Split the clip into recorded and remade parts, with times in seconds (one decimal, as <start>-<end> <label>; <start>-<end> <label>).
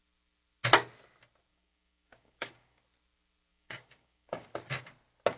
0.0-1.5 recorded; 1.5-2.8 remade; 2.8-3.5 recorded; 3.5-4.5 remade; 4.5-5.4 recorded